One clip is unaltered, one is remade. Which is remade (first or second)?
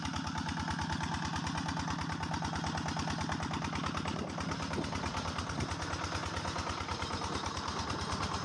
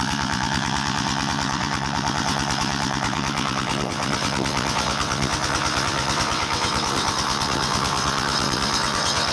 second